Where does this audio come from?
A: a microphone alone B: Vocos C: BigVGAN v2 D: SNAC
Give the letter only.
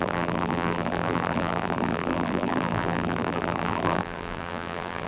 C